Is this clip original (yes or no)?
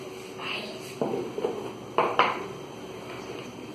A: no